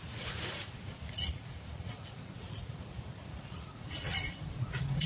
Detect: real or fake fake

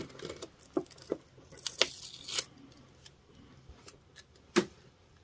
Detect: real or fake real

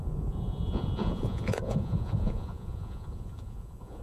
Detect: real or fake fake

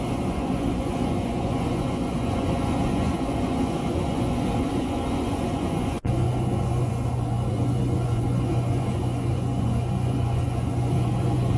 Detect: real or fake fake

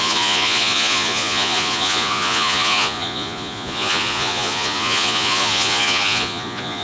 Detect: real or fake fake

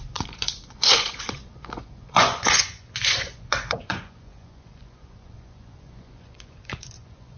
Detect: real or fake fake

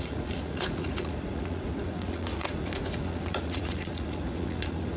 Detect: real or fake fake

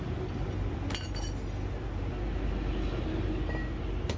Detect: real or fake real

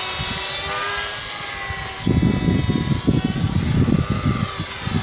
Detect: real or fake real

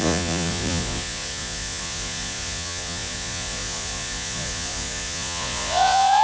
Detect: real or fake fake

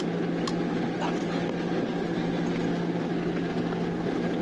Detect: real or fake real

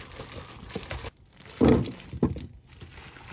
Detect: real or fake real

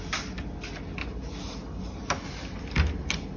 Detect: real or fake real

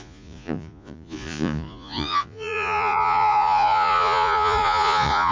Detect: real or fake fake